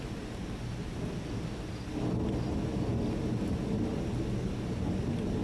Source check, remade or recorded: recorded